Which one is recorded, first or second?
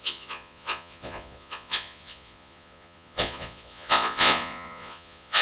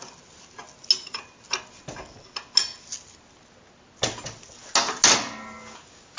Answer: second